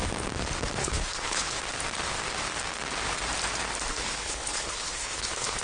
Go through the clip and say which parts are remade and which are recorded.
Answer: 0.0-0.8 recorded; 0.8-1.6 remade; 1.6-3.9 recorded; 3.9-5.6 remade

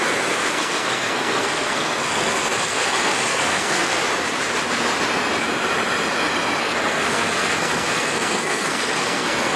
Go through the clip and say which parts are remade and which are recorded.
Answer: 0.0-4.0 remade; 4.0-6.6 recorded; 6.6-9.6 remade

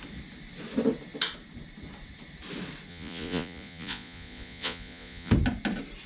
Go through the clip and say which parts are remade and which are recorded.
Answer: 0.0-2.9 recorded; 2.9-5.3 remade; 5.3-6.1 recorded